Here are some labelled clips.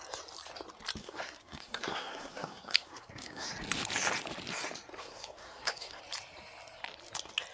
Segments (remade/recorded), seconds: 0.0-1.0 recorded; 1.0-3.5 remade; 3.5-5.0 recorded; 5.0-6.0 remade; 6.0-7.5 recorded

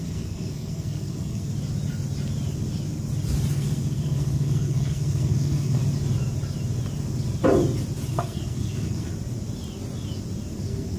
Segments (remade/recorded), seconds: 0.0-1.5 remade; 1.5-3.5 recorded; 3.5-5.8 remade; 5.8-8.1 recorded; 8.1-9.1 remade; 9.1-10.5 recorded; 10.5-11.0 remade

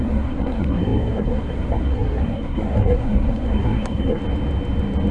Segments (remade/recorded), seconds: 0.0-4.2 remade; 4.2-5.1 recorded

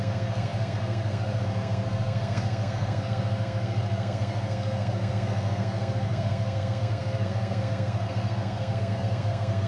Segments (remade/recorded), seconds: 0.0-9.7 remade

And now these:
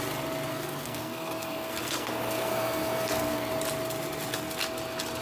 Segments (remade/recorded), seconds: 0.0-0.5 recorded; 0.5-3.5 remade; 3.5-5.2 recorded